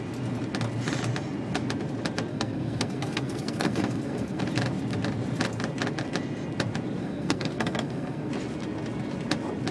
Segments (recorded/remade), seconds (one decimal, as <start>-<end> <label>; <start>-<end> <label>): 0.0-2.3 recorded; 2.3-4.4 remade; 4.4-7.0 recorded; 7.0-8.3 remade; 8.3-9.7 recorded